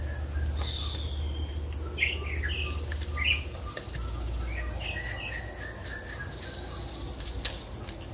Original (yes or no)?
yes